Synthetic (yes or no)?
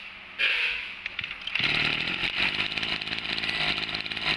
no